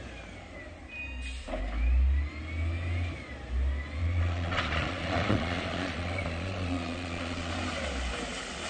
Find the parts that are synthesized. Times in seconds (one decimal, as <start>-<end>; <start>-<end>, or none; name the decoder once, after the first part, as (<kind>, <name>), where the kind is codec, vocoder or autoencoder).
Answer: 4.0-7.5 (vocoder, Vocos)